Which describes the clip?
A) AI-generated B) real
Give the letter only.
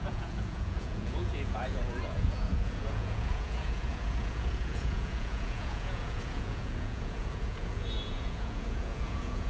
A